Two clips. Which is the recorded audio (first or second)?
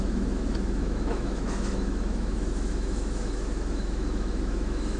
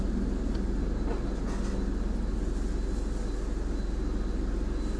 second